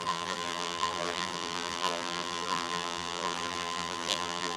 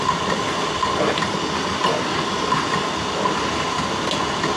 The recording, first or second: second